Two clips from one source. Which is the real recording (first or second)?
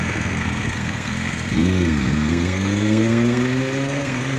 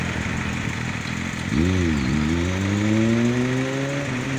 second